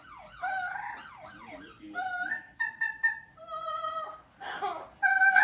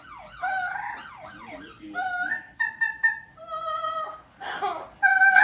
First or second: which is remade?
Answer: first